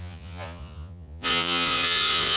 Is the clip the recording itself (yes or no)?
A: no